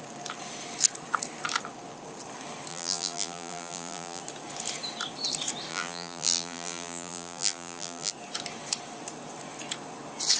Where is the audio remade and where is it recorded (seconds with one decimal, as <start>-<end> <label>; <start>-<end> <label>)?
0.0-2.7 recorded; 2.7-4.2 remade; 4.2-5.7 recorded; 5.7-8.1 remade; 8.1-10.4 recorded